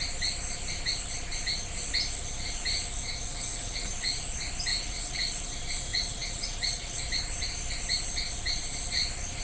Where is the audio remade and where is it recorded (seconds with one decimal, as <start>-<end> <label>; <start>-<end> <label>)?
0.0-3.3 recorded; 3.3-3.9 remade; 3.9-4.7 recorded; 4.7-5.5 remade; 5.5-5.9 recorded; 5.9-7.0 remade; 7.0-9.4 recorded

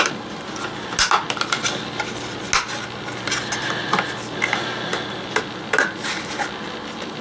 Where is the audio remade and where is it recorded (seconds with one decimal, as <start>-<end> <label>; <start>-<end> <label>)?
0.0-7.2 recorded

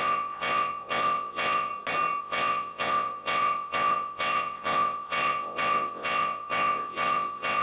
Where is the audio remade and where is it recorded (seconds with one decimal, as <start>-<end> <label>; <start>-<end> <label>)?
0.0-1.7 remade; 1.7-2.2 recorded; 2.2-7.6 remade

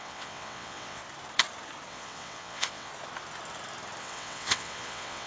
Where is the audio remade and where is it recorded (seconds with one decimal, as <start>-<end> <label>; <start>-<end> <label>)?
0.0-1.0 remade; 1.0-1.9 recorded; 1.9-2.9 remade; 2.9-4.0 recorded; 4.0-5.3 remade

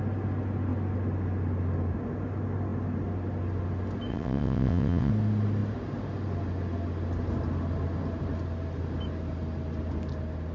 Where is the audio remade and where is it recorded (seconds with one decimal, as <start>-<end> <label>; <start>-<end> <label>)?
0.0-4.1 recorded; 4.1-5.1 remade; 5.1-10.5 recorded

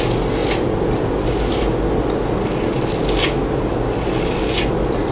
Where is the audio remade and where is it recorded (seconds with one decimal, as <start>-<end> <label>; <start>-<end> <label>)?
0.0-5.1 recorded

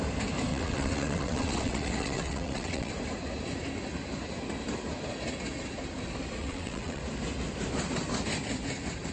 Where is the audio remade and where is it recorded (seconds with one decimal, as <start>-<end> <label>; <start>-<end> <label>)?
0.0-0.5 recorded; 0.5-2.9 remade; 2.9-6.4 recorded; 6.4-7.0 remade; 7.0-9.1 recorded